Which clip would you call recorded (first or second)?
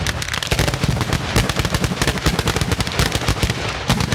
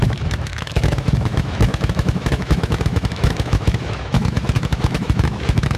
first